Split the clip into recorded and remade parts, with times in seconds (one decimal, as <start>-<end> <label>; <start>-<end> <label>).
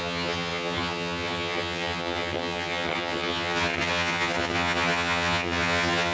0.0-6.1 remade